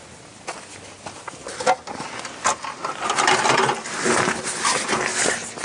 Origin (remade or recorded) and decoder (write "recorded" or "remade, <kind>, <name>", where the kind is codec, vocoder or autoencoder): recorded